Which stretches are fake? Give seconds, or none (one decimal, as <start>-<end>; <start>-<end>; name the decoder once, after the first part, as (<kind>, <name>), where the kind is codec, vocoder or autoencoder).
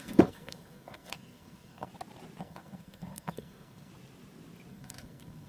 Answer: 0.0-1.9 (codec, SNAC); 2.4-3.9; 4.7-5.5